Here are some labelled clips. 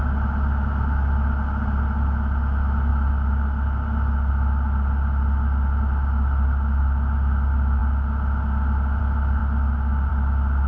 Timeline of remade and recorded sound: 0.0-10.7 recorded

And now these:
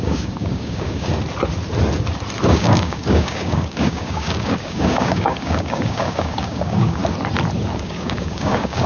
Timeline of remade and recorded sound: 0.0-1.1 remade; 1.1-2.5 recorded; 2.5-7.0 remade; 7.0-7.8 recorded; 7.8-8.9 remade

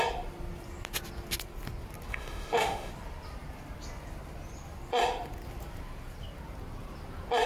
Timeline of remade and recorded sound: 0.0-2.1 recorded; 2.1-2.9 remade; 2.9-7.5 recorded

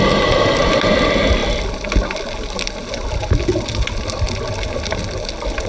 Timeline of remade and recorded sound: 0.0-5.7 recorded